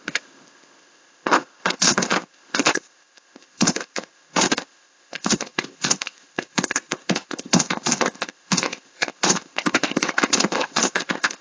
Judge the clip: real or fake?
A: fake